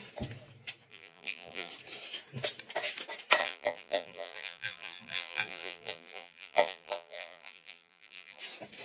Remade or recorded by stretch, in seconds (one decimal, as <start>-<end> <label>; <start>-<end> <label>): 0.0-0.9 recorded; 0.9-1.7 remade; 1.7-3.4 recorded; 3.4-8.4 remade; 8.4-8.8 recorded